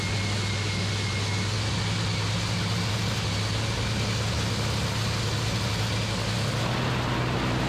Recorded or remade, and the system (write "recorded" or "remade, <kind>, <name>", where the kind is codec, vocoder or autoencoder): recorded